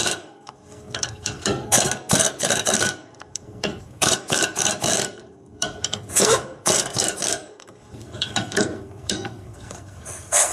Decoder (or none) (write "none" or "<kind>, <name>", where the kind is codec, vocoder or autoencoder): codec, SNAC